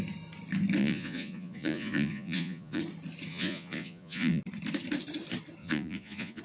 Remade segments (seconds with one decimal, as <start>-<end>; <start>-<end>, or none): 0.8-2.8; 3.3-4.4; 5.6-6.4